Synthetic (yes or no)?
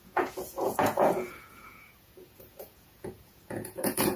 yes